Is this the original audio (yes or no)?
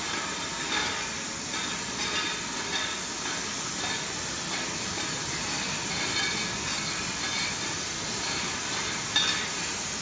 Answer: yes